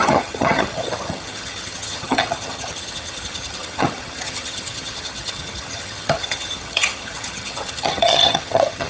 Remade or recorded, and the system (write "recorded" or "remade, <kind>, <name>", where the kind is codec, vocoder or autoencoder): remade, vocoder, HiFi-GAN